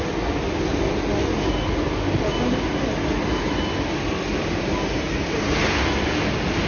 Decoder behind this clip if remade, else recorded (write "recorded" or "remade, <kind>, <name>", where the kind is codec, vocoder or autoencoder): recorded